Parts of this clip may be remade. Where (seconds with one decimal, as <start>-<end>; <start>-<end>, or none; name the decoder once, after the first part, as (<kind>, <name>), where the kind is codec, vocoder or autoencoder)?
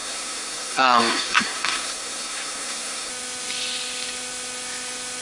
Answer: 0.0-3.1 (codec, SNAC)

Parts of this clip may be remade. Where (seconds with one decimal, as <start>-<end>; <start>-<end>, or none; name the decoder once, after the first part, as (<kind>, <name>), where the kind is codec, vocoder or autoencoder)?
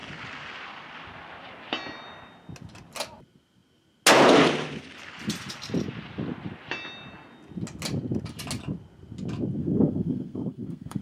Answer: 9.6-11.0 (codec, SNAC)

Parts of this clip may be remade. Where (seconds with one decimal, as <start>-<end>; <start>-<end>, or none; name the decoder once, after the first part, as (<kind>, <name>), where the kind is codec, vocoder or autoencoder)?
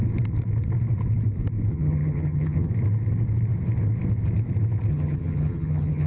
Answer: 1.7-2.7 (vocoder, HiFi-GAN); 4.9-6.1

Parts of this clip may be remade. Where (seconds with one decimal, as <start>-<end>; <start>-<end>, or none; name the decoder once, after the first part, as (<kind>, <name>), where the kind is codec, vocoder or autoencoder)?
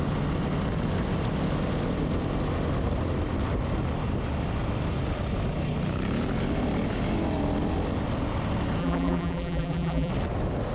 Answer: 8.8-10.1 (vocoder, BigVGAN v2)